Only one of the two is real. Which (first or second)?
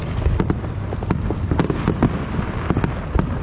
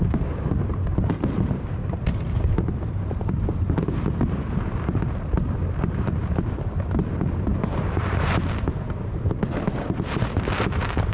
first